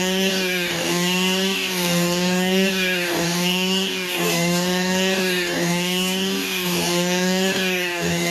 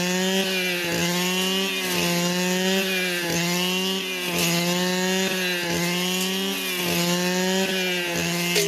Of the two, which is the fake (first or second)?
first